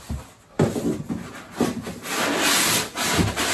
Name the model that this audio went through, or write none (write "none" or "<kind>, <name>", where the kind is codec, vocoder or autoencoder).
none